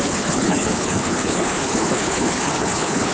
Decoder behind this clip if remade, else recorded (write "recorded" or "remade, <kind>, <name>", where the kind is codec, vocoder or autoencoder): remade, codec, HILCodec